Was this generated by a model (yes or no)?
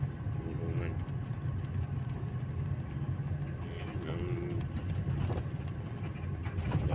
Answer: no